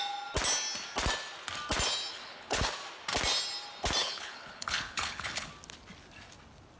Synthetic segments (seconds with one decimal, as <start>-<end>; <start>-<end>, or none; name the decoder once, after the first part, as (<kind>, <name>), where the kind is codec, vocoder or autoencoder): 2.1-2.7 (codec, HILCodec); 4.0-5.5